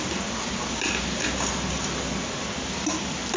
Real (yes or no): yes